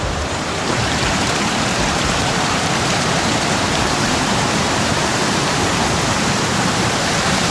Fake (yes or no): yes